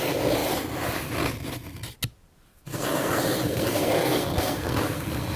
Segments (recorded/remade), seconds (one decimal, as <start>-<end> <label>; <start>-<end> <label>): 0.0-2.5 recorded; 2.5-5.4 remade